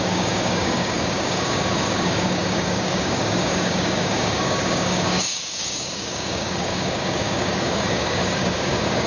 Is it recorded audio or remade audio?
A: remade